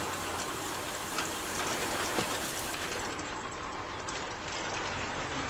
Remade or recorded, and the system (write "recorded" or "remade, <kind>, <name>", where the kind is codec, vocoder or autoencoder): remade, vocoder, BigVGAN v2